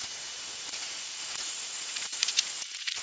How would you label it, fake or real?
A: fake